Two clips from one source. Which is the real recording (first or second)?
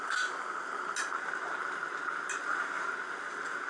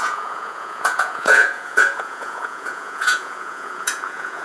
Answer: first